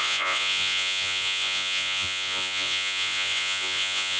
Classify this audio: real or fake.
fake